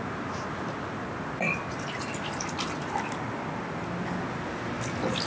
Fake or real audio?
real